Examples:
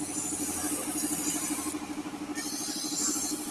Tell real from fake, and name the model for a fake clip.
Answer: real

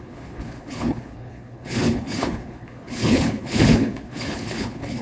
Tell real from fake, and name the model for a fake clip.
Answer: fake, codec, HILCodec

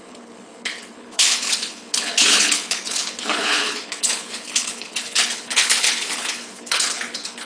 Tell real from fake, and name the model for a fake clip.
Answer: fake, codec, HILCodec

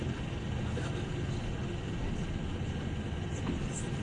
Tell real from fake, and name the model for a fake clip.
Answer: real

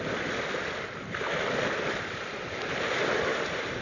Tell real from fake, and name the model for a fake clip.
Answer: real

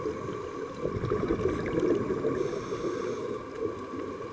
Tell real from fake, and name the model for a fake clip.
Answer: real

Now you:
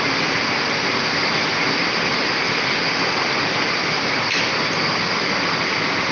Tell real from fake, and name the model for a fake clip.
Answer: real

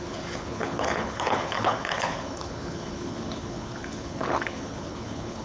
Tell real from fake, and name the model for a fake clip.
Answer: fake, codec, HILCodec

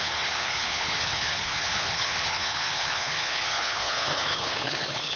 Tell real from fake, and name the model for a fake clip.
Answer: fake, codec, HILCodec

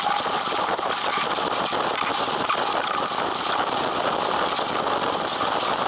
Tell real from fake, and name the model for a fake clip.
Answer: real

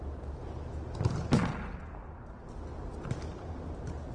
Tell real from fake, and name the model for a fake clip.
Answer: real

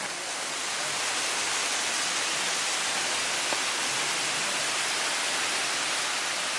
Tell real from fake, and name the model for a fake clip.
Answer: real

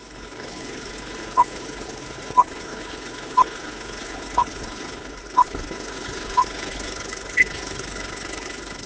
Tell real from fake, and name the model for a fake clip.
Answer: fake, codec, HILCodec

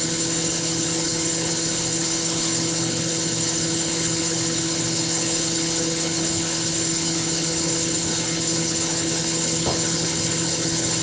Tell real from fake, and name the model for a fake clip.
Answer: fake, codec, HILCodec